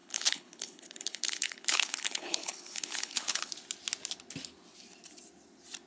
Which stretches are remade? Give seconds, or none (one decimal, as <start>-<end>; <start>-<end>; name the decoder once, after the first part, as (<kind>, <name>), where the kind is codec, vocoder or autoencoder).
0.0-3.5 (codec, HILCodec)